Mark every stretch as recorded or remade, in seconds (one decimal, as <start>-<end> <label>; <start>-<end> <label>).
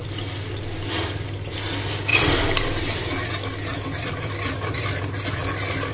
0.0-2.1 recorded; 2.1-3.3 remade; 3.3-3.7 recorded; 3.7-5.0 remade; 5.0-5.9 recorded